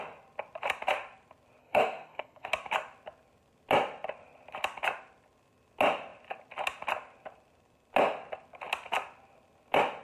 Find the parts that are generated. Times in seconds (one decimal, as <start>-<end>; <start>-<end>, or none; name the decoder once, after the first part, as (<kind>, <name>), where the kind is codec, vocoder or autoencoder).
1.6-2.5 (codec, SNAC)